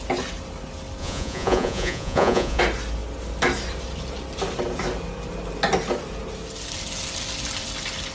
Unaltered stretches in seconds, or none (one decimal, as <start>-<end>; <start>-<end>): 0.0-1.0; 2.6-8.1